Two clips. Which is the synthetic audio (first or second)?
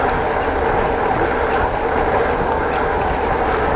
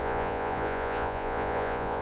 second